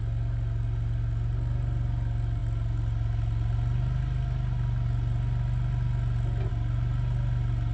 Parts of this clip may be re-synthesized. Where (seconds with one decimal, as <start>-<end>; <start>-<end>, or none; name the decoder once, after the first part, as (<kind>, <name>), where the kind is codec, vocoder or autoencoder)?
none